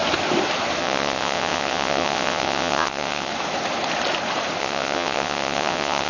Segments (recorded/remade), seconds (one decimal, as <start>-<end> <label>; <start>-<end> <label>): 0.0-0.8 recorded; 0.8-3.3 remade; 3.3-4.6 recorded; 4.6-6.1 remade